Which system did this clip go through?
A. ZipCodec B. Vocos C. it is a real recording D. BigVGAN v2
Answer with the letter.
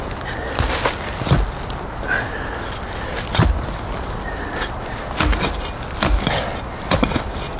C